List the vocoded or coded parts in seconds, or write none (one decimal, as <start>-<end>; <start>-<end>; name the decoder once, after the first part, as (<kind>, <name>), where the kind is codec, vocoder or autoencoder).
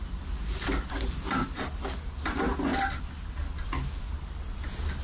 none